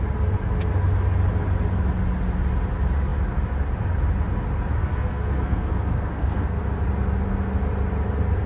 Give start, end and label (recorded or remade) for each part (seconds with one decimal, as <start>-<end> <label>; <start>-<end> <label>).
0.0-4.8 recorded; 4.8-6.6 remade; 6.6-8.5 recorded